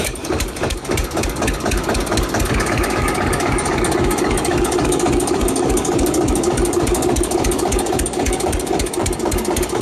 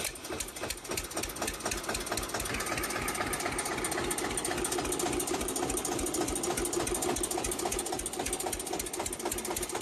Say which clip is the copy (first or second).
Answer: first